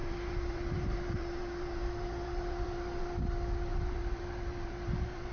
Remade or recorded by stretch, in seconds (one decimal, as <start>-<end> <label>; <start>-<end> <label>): 0.0-3.2 remade; 3.2-3.7 recorded; 3.7-5.3 remade